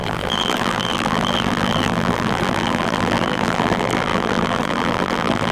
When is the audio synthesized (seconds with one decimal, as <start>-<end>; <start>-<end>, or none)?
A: 0.0-5.5